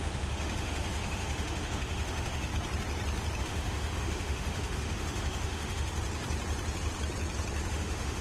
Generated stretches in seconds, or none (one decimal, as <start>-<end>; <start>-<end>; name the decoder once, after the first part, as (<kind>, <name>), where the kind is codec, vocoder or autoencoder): 0.0-2.5 (autoencoder, DAC-VAE); 3.4-5.9; 7.7-8.2